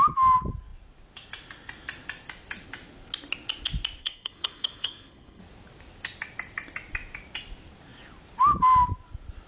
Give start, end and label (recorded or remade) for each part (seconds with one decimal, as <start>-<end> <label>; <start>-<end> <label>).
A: 0.0-4.0 recorded; 4.0-5.4 remade; 5.4-9.5 recorded